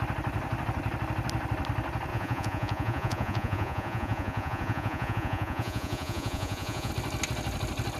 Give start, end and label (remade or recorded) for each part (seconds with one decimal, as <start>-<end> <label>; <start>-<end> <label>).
0.0-2.1 recorded; 2.1-6.9 remade; 6.9-8.0 recorded